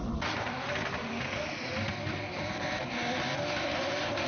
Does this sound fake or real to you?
real